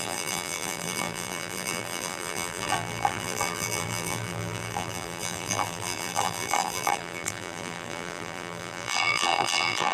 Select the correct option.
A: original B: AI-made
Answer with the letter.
B